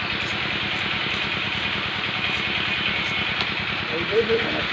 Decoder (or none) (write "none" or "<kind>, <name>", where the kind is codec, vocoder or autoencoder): none